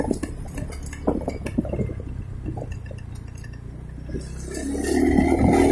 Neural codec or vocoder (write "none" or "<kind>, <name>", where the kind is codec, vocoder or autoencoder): none